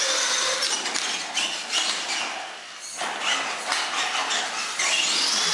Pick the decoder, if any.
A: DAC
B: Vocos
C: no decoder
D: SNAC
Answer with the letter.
C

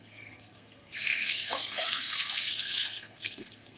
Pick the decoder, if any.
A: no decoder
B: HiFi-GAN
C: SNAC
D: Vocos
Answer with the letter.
C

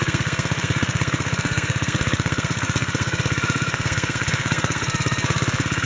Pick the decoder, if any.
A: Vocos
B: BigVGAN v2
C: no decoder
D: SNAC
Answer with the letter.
D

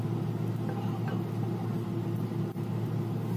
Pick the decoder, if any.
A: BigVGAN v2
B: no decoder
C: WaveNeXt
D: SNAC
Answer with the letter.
B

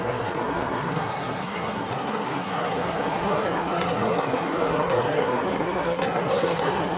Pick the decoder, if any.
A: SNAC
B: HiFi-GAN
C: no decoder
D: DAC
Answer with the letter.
A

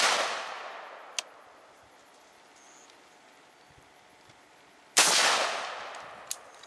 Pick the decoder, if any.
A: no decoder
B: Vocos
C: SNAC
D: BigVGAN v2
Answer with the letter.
A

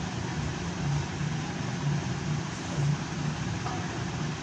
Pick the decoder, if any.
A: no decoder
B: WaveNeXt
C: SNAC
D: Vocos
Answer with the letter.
A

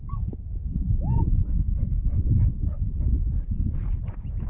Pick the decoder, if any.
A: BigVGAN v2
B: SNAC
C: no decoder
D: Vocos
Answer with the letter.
C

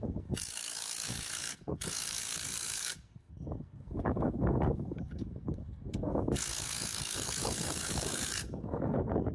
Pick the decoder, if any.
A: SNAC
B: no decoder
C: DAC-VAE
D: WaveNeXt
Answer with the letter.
A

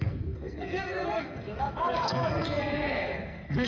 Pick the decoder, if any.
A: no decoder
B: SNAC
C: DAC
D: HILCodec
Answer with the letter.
B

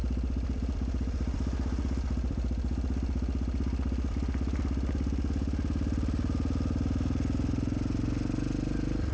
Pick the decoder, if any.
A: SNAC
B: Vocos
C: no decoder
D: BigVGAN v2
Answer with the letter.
C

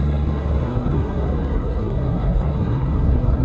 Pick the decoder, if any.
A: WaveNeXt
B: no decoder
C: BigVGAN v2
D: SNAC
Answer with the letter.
D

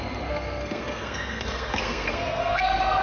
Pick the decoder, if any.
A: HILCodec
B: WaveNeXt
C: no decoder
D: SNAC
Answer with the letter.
D